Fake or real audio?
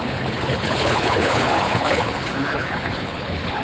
fake